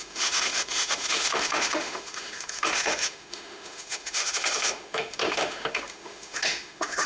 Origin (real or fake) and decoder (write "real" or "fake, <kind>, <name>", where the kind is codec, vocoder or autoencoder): fake, autoencoder, DAC-VAE